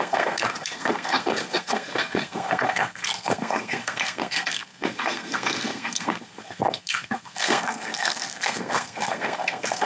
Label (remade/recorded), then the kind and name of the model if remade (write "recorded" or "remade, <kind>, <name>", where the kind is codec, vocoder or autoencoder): remade, codec, SNAC